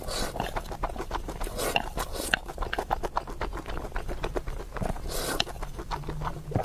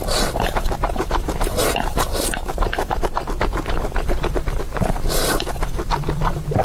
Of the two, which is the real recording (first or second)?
first